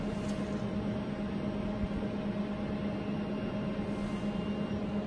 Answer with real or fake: real